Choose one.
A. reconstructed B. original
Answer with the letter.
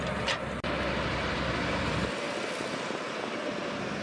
B